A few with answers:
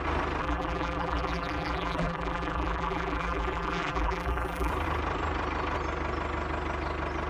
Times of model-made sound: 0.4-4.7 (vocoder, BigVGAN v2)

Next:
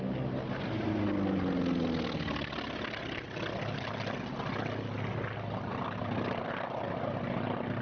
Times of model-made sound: 5.7-6.5 (vocoder, BigVGAN v2)

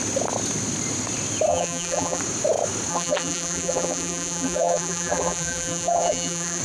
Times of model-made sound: 1.5-2.2 (vocoder, BigVGAN v2); 2.9-6.6